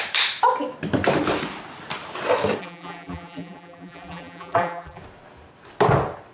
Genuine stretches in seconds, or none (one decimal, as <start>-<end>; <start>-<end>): 0.0-2.6; 5.0-6.3